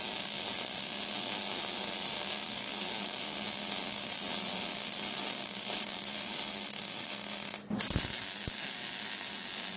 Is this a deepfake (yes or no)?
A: no